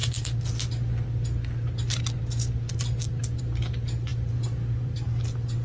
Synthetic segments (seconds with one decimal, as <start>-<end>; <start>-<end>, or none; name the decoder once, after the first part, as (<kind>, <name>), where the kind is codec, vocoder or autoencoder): 4.1-5.0 (vocoder, BigVGAN v2)